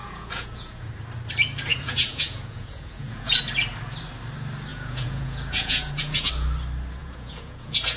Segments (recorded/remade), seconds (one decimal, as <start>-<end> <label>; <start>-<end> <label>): 0.0-0.9 remade; 0.9-1.7 recorded; 1.7-3.4 remade; 3.4-4.7 recorded; 4.7-6.3 remade; 6.3-7.0 recorded; 7.0-8.0 remade